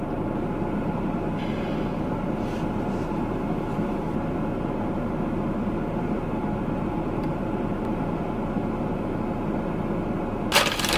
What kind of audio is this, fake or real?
real